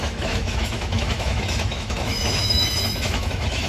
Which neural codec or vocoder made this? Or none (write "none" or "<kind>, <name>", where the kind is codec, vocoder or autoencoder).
autoencoder, DAC-VAE